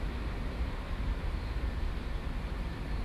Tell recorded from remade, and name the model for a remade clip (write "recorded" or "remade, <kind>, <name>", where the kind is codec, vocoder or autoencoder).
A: remade, vocoder, BigVGAN v2